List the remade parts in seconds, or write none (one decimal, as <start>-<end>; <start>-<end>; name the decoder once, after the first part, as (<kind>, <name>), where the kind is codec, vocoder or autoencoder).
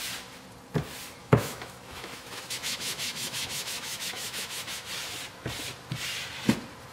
1.2-4.9 (autoencoder, DAC-VAE)